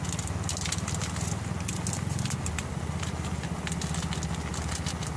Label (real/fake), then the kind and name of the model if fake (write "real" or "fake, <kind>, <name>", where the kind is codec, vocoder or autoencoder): real